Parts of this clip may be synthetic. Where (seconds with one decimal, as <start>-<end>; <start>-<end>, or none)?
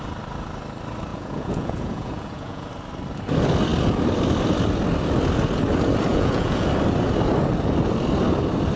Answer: 1.1-2.7; 6.1-6.7